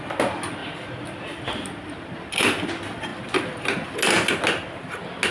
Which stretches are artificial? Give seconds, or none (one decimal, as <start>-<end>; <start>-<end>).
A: none